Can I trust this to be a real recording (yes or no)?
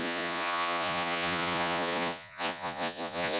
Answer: no